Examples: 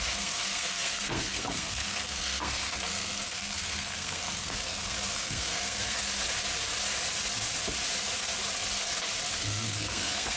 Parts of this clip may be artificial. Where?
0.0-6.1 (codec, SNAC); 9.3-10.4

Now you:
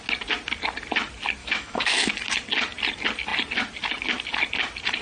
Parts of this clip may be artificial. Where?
1.4-2.1 (autoencoder, DAC-VAE)